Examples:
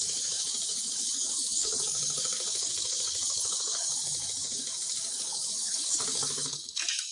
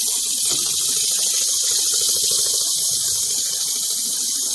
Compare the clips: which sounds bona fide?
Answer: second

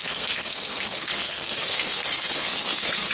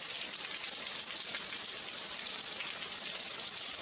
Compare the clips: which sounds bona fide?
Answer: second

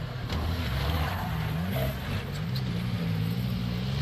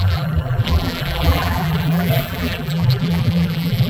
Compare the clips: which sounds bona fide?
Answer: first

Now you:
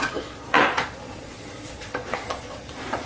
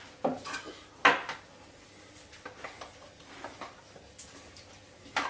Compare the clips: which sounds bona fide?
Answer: second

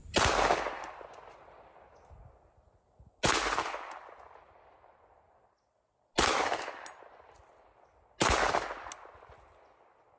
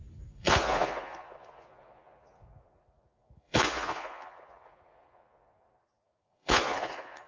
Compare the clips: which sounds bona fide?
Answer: first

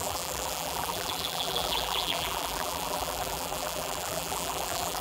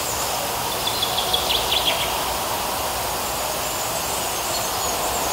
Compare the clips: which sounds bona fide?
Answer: second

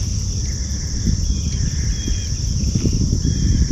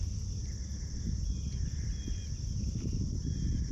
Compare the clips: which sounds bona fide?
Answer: second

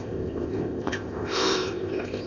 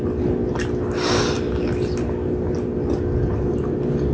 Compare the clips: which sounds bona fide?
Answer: second